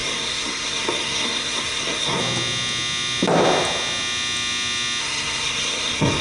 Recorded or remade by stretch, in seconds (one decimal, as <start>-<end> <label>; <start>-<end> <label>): 0.0-2.2 remade; 2.2-5.0 recorded; 5.0-6.2 remade